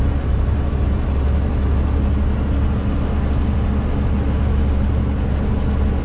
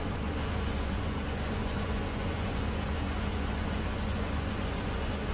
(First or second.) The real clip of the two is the first